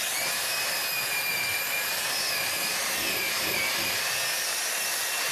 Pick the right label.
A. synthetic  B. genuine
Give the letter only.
B